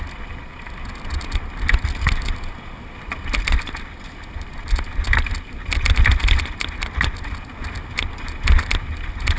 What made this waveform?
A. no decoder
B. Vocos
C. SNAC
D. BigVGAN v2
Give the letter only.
A